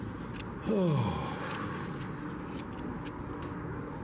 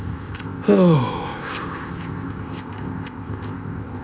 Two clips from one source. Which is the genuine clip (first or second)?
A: first